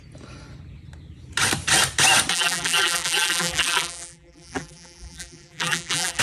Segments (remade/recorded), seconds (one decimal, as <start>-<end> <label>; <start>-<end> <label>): 0.0-2.3 recorded; 2.3-6.2 remade